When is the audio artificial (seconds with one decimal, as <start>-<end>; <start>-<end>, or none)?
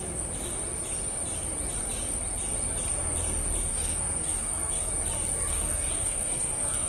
3.7-4.9; 5.5-6.9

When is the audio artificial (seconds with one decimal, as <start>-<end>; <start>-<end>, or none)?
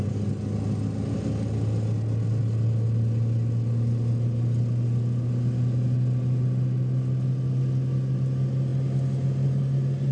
none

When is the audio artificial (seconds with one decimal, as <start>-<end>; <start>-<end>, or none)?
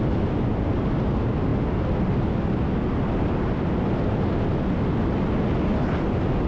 none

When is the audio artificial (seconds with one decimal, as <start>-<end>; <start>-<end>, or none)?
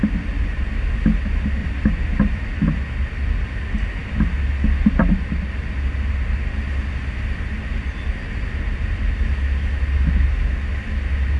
1.6-2.6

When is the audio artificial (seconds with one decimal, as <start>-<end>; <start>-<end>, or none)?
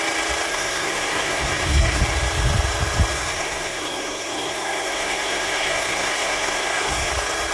0.5-2.0; 3.1-7.1